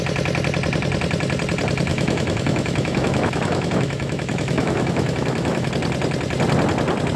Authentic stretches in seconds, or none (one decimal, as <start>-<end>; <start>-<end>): 0.0-1.9; 5.7-7.2